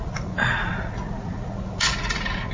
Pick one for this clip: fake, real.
fake